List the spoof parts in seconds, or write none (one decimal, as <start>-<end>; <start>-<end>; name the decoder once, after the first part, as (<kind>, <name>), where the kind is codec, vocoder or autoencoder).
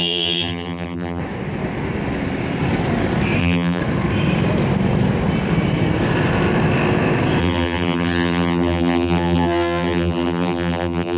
0.0-1.2 (vocoder, BigVGAN v2); 3.4-3.8; 7.4-11.2